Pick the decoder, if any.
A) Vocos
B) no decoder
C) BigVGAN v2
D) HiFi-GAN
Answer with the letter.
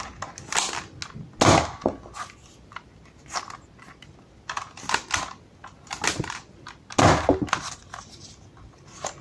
B